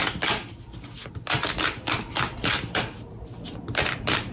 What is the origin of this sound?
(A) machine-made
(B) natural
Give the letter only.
B